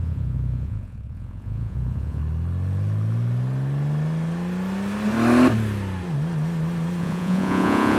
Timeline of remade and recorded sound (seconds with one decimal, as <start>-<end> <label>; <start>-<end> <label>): 0.0-2.2 remade; 2.2-7.0 recorded; 7.0-8.0 remade